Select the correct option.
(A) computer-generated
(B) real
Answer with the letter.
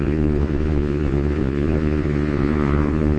A